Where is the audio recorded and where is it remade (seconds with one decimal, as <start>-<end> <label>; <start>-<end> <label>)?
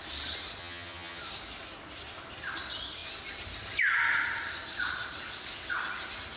0.0-0.6 recorded; 0.6-1.2 remade; 1.2-6.4 recorded